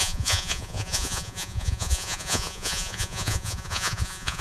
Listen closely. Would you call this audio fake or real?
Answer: fake